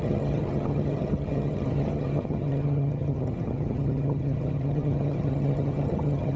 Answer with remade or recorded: remade